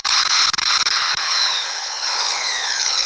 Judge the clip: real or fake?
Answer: fake